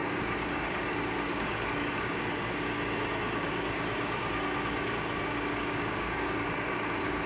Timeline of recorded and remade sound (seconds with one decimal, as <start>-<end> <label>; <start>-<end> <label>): 0.0-7.3 remade